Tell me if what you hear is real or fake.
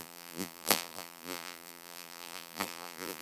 fake